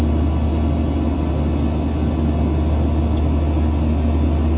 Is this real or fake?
real